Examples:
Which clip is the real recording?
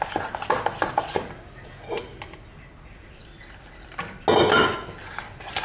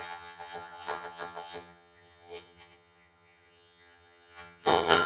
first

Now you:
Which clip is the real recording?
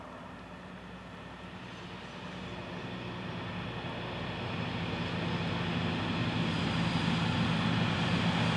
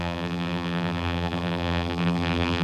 first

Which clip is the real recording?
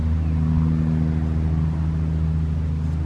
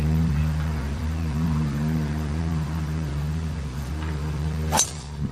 first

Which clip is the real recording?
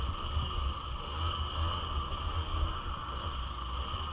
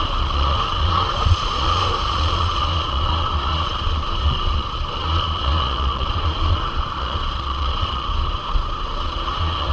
first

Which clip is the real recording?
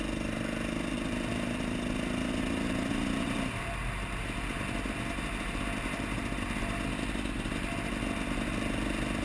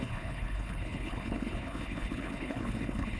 first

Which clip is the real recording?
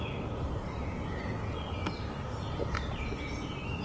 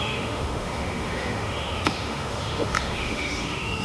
first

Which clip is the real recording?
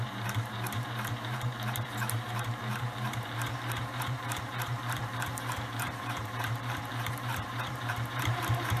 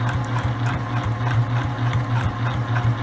second